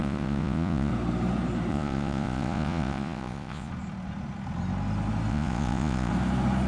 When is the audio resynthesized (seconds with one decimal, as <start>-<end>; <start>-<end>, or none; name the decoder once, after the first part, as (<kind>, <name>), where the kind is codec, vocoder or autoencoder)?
0.0-0.9 (vocoder, Vocos); 1.7-3.7; 5.3-6.1

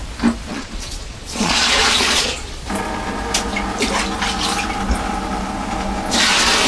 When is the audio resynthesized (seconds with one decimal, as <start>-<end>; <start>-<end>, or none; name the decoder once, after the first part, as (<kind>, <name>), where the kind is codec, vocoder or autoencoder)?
0.5-2.6 (vocoder, Vocos)

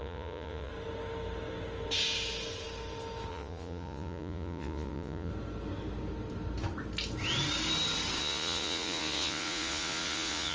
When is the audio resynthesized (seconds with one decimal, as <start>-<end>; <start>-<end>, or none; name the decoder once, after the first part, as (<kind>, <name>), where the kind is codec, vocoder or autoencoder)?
0.0-0.7 (vocoder, Vocos); 3.3-5.3; 8.2-10.5

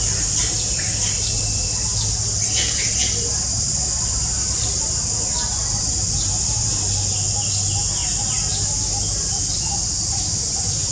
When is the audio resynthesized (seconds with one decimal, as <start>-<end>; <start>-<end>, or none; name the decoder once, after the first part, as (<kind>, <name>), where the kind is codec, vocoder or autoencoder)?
none